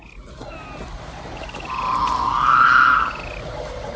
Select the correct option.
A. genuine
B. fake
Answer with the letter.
A